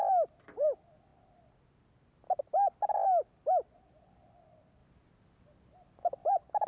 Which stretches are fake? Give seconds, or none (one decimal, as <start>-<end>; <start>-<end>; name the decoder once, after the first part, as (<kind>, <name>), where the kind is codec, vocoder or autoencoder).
none